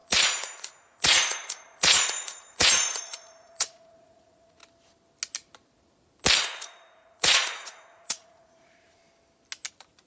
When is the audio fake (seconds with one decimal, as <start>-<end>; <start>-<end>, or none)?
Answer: 0.0-4.6; 6.4-9.0; 9.7-10.1